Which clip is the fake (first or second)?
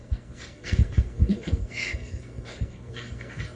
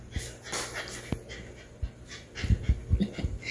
first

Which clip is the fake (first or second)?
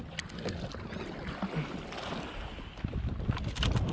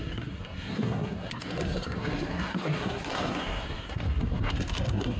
second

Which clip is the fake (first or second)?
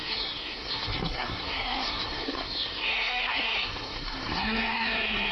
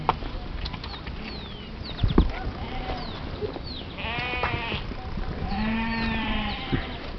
first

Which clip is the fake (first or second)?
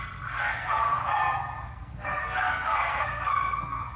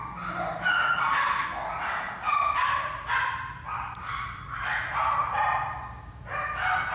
first